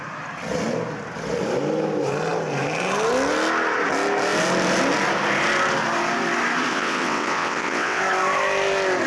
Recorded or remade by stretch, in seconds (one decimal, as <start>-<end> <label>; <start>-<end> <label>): 0.0-6.7 recorded; 6.7-8.0 remade; 8.0-9.1 recorded